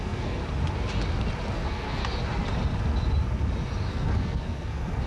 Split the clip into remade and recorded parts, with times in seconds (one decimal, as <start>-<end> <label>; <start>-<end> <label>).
0.0-0.4 remade; 0.4-1.5 recorded; 1.5-2.0 remade; 2.0-3.9 recorded; 3.9-5.1 remade